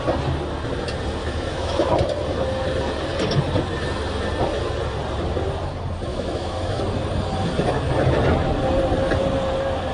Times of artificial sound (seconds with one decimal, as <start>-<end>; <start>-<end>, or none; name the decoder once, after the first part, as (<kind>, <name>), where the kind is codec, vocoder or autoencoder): 1.2-1.9 (autoencoder, DAC-VAE); 6.1-6.8